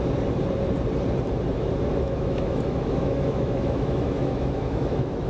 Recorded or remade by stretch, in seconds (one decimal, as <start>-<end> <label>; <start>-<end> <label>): 0.0-1.9 recorded; 1.9-5.3 remade